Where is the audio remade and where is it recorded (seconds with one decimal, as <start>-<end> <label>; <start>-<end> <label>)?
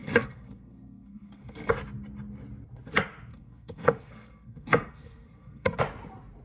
0.0-1.7 remade; 1.7-3.3 recorded; 3.3-5.8 remade; 5.8-6.4 recorded